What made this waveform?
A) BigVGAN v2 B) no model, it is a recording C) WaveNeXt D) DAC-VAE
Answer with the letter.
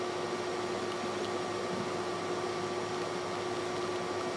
B